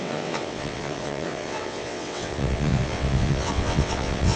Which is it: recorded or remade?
remade